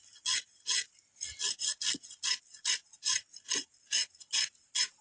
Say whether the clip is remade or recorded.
recorded